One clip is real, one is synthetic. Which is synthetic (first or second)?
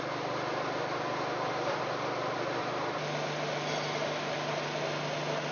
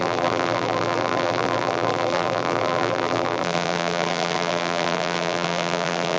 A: second